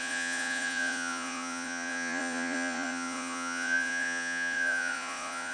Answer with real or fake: fake